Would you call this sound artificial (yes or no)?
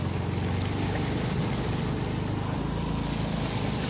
no